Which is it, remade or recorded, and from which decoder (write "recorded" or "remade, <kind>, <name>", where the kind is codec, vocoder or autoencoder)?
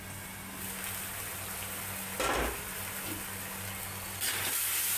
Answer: recorded